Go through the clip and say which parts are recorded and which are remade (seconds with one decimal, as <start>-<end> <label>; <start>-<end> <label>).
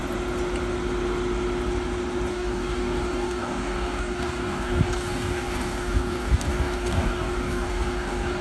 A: 0.0-2.3 recorded; 2.3-8.4 remade